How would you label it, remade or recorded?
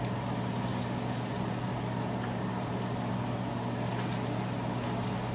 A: recorded